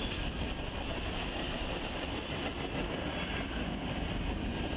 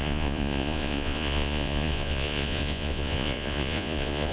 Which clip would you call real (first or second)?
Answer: first